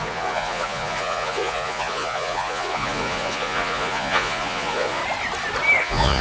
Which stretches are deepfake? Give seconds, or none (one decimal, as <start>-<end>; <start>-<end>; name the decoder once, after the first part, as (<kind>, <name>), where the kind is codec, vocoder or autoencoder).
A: 0.0-5.0 (vocoder, Vocos); 5.8-6.2